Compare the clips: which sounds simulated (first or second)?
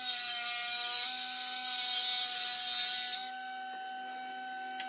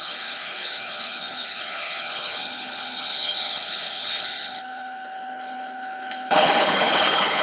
second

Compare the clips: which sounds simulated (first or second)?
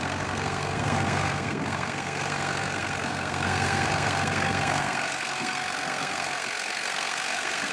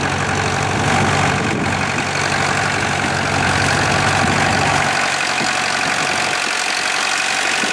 first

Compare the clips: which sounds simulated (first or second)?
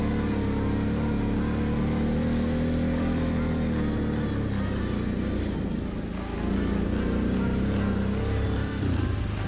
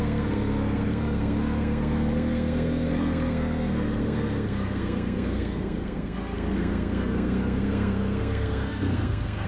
second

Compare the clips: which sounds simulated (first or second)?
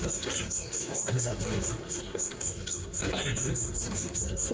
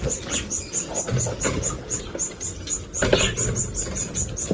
first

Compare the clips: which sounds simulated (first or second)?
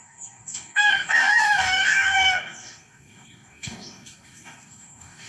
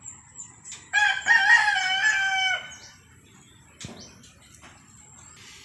first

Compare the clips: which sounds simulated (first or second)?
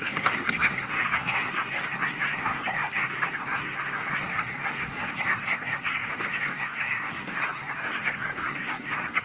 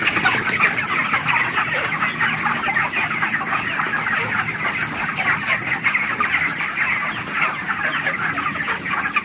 first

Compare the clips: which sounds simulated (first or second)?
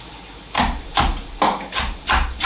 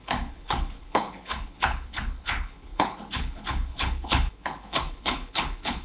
second